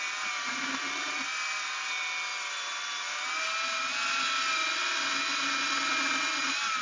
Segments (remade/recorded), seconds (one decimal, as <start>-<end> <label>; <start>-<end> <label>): 0.0-6.8 recorded